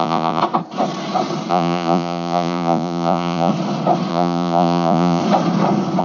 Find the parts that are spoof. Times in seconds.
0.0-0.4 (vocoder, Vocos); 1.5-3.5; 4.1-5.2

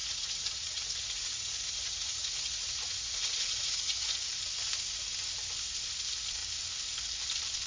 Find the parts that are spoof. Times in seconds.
0.0-4.3 (vocoder, Vocos)

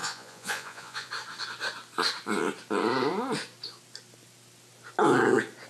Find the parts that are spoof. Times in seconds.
0.0-1.1 (vocoder, Vocos)

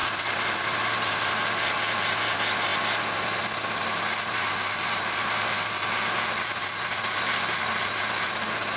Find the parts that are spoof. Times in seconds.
none